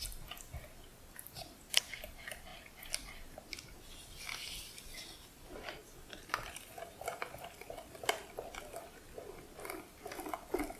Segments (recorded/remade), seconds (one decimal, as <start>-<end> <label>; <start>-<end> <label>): 0.0-5.8 recorded; 5.8-8.2 remade; 8.2-10.8 recorded